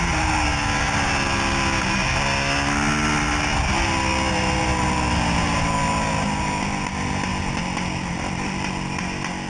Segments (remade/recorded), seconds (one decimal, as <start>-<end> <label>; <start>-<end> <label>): 0.0-9.5 recorded

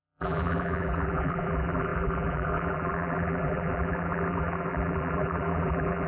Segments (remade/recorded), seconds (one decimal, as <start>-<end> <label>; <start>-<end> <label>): 0.0-6.1 remade

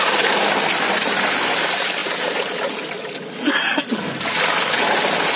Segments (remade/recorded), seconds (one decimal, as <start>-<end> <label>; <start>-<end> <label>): 0.0-2.0 recorded; 2.0-2.7 remade; 2.7-5.4 recorded

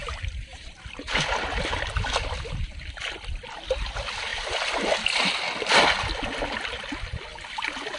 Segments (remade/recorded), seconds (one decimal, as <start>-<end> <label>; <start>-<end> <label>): 0.0-0.5 recorded; 0.5-1.1 remade; 1.1-8.0 recorded

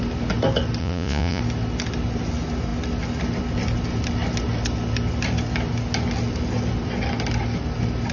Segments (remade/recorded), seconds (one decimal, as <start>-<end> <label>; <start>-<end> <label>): 0.0-0.8 recorded; 0.8-1.4 remade; 1.4-8.1 recorded

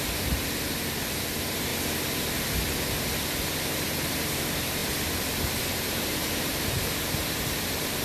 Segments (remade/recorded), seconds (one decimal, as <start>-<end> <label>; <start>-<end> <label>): 0.0-1.7 remade; 1.7-3.7 recorded; 3.7-4.8 remade; 4.8-5.6 recorded; 5.6-8.0 remade

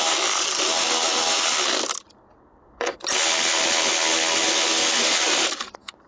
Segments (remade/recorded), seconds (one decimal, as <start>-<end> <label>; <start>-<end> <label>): 0.0-5.0 recorded; 5.0-6.1 remade

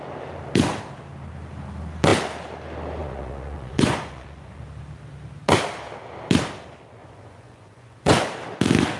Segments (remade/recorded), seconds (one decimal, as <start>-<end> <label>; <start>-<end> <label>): 0.0-3.0 recorded; 3.0-4.6 remade; 4.6-7.0 recorded; 7.0-8.3 remade; 8.3-9.0 recorded